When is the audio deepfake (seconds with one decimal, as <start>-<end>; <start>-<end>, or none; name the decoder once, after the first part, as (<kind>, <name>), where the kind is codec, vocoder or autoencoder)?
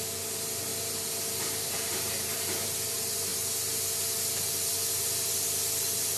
0.0-0.7 (vocoder, BigVGAN v2); 1.9-3.3; 4.7-6.2